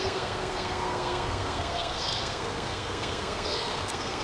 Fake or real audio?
fake